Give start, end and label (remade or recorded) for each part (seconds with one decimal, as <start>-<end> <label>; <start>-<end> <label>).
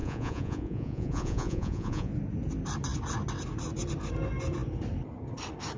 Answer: 0.0-2.1 remade; 2.1-5.8 recorded